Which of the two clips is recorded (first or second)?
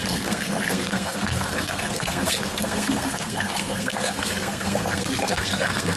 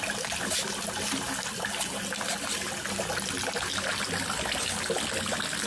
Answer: second